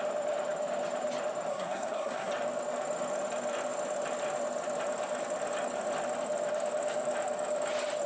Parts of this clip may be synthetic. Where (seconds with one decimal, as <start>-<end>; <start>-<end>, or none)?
1.5-2.3